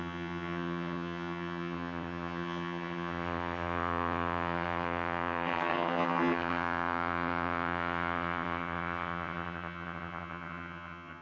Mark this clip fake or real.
fake